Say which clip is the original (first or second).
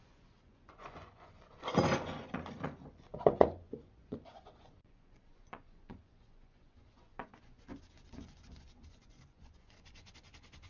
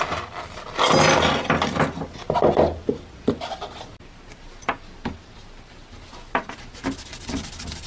second